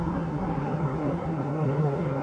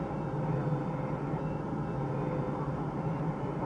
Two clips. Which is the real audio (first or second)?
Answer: second